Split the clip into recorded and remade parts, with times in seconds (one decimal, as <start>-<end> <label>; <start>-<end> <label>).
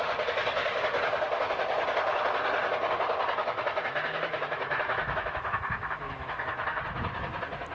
0.0-3.4 recorded; 3.4-6.8 remade; 6.8-7.7 recorded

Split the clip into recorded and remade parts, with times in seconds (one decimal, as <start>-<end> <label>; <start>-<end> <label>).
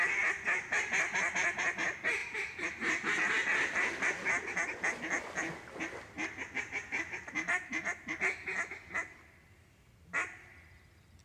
0.0-2.2 recorded; 2.2-2.8 remade; 2.8-11.2 recorded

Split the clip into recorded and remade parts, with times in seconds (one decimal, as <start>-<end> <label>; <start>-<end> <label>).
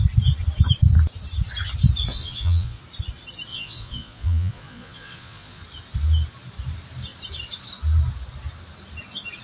0.0-2.1 recorded; 2.1-2.8 remade; 2.8-3.5 recorded; 3.5-5.6 remade; 5.6-9.4 recorded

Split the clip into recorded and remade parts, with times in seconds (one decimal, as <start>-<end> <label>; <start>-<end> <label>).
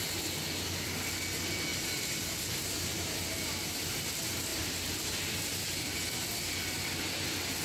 0.0-1.7 recorded; 1.7-3.7 remade; 3.7-4.5 recorded; 4.5-6.0 remade; 6.0-7.6 recorded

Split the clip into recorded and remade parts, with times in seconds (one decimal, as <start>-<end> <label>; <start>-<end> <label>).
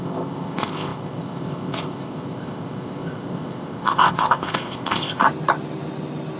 0.0-5.2 remade; 5.2-6.4 recorded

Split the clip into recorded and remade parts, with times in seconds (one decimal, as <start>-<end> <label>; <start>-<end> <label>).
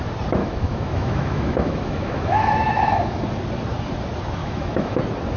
0.0-0.4 recorded; 0.4-3.2 remade; 3.2-4.4 recorded; 4.4-5.0 remade; 5.0-5.4 recorded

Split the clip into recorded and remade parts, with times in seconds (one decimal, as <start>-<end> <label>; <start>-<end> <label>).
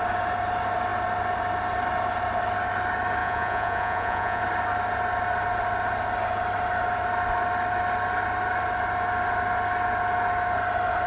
0.0-3.2 recorded; 3.2-4.4 remade; 4.4-11.1 recorded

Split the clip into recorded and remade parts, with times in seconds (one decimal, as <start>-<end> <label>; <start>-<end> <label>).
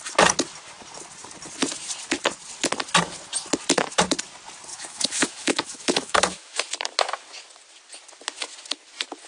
0.0-4.7 recorded; 4.7-6.6 remade; 6.6-9.3 recorded